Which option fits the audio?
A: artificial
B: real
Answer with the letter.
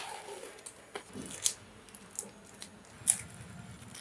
B